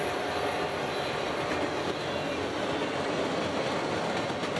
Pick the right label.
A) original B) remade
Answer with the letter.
A